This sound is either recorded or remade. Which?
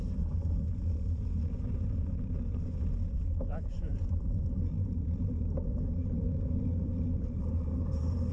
remade